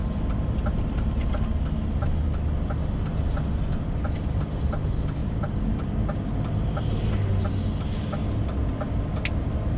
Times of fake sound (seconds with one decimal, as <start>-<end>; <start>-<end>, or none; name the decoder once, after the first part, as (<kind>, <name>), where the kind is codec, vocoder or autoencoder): 5.2-5.9 (vocoder, BigVGAN v2)